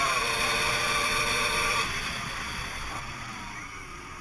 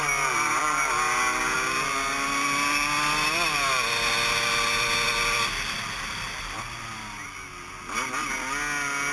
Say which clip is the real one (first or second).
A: second